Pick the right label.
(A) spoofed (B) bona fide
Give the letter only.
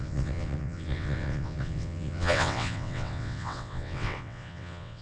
A